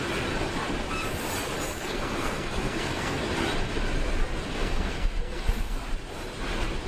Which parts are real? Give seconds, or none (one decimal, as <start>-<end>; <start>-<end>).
0.0-1.7; 3.2-4.5; 5.8-6.9